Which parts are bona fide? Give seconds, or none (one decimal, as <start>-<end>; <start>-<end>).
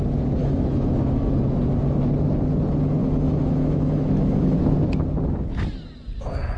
0.0-0.4; 1.4-3.0; 4.6-6.6